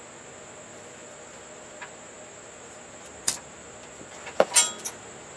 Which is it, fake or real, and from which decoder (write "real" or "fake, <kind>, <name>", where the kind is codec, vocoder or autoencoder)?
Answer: fake, vocoder, BigVGAN v2